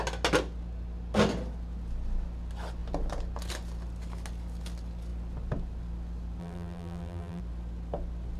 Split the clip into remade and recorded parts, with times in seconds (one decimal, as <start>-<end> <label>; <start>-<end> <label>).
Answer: 0.0-6.4 recorded; 6.4-7.4 remade; 7.4-8.4 recorded